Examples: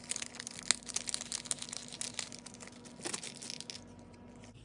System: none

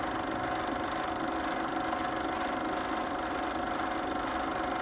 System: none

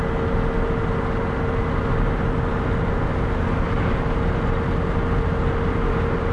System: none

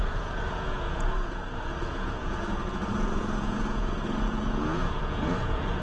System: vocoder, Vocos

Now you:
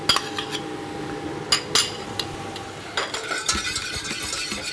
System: none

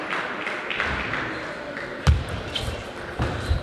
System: none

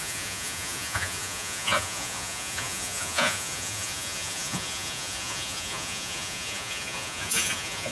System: vocoder, Vocos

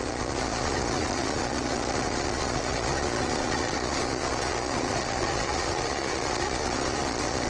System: vocoder, Vocos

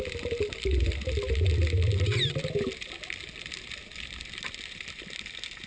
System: none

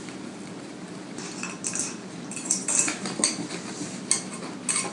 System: none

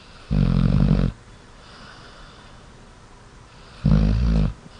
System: none